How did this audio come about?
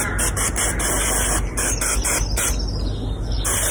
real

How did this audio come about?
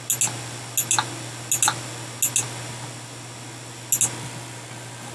real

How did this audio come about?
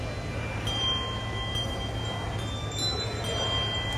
real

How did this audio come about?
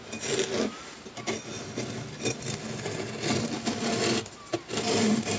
real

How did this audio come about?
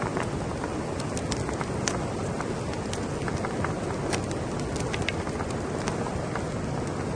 real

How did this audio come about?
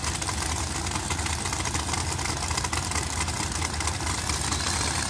real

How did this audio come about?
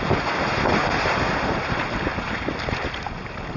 fake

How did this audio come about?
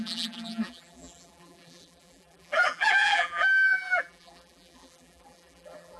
fake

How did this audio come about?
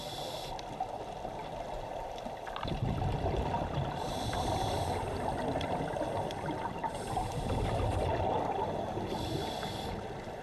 fake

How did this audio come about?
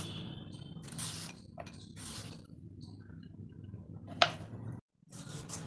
fake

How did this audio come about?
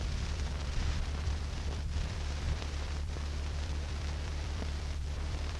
fake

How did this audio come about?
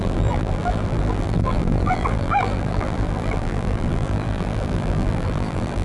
fake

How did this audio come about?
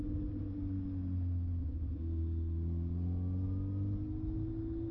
real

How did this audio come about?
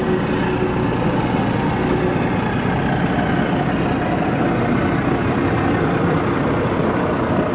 real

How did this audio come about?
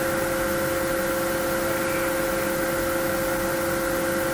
real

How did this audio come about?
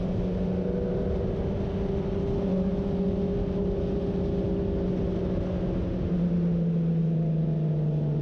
real